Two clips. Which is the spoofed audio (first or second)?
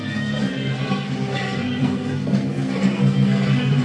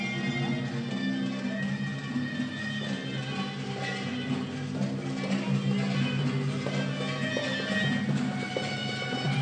first